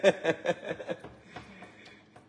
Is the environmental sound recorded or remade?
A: recorded